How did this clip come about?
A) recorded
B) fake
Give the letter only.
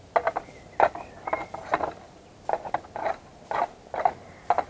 A